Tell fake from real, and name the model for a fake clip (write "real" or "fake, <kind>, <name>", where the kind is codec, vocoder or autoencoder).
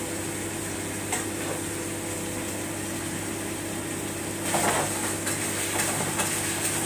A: real